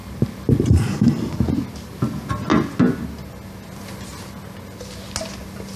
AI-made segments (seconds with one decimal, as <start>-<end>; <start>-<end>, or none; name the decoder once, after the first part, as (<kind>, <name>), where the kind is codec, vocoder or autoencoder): none